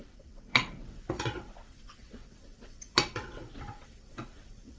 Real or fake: fake